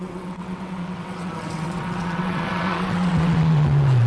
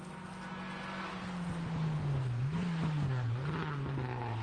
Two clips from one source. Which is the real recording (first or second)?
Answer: second